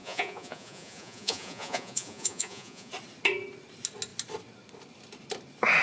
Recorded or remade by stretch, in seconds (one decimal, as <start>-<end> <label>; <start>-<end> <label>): 0.0-2.9 remade; 2.9-5.8 recorded